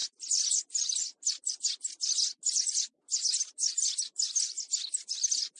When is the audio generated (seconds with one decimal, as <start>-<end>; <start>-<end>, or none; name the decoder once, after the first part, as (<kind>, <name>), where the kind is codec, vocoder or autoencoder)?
none